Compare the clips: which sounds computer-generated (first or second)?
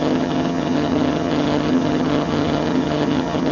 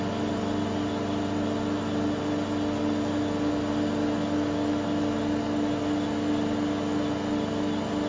first